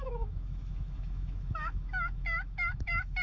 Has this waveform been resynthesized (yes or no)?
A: yes